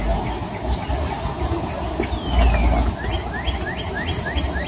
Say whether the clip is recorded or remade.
recorded